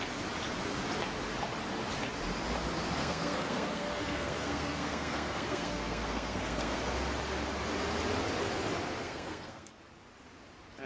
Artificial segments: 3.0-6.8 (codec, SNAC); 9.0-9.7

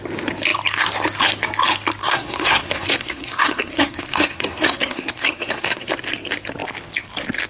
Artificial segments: 2.0-5.9 (codec, SNAC)

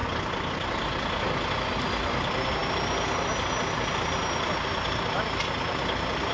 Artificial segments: none

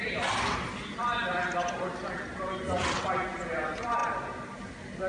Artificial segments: none

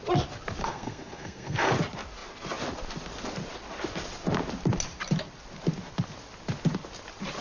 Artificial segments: 0.6-1.7 (codec, SNAC)